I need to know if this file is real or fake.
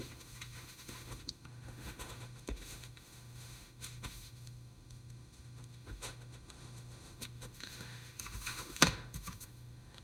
fake